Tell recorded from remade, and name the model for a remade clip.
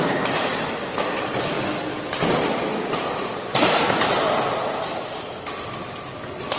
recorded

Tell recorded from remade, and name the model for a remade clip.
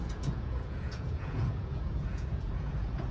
remade, vocoder, Vocos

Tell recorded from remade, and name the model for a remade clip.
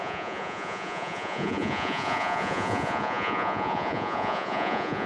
remade, vocoder, Vocos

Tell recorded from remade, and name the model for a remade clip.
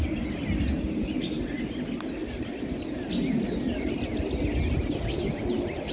recorded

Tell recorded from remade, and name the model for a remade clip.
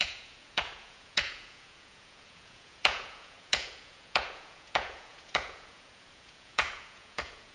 remade, vocoder, Vocos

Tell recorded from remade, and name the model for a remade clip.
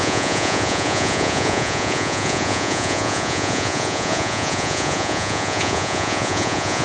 remade, vocoder, Vocos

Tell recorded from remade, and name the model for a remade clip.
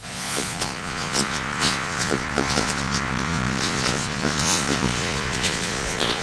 remade, vocoder, Vocos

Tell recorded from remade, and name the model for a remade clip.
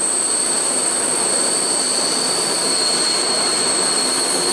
recorded